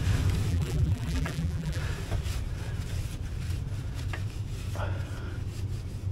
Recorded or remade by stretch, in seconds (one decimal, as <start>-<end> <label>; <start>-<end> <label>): 0.0-0.5 recorded; 0.5-1.8 remade; 1.8-6.1 recorded

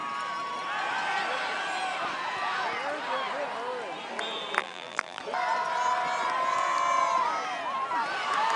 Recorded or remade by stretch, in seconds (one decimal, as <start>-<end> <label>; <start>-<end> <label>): 0.0-4.6 recorded; 4.6-5.2 remade; 5.2-8.6 recorded

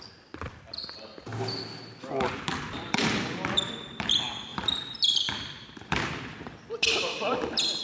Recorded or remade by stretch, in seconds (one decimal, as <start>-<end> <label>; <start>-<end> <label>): 0.0-1.3 remade; 1.3-2.3 recorded; 2.3-7.8 remade